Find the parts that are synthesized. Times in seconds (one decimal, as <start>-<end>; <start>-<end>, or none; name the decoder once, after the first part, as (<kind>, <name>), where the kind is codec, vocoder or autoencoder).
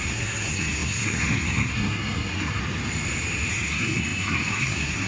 0.0-2.6 (codec, SNAC); 3.5-5.1